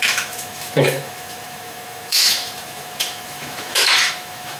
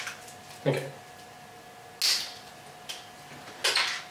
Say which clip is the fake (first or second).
first